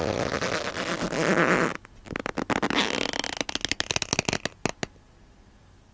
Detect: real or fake real